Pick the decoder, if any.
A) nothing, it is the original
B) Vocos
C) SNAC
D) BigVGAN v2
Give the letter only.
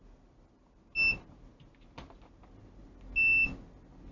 A